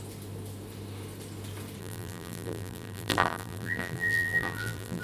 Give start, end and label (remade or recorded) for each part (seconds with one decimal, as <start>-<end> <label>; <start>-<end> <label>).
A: 0.0-1.8 recorded; 1.8-5.0 remade